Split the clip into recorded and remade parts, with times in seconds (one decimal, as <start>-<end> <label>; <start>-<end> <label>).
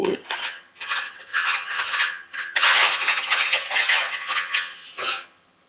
0.0-5.7 remade